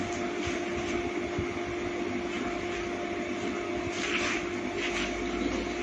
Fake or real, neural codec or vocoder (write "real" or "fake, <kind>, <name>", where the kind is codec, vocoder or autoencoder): real